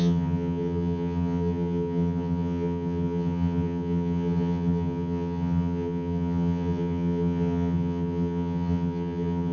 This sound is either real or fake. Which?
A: fake